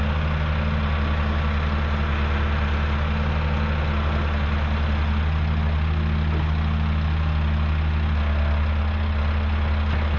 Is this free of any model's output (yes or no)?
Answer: yes